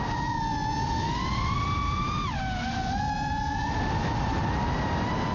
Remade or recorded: recorded